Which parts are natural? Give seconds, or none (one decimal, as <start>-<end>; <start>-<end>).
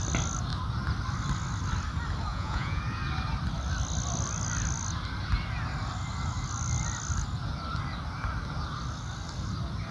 0.0-2.3; 2.8-9.9